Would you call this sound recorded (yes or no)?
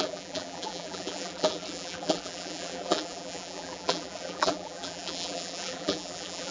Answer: no